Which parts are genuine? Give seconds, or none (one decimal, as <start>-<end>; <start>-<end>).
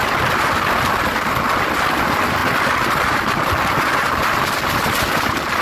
0.0-5.6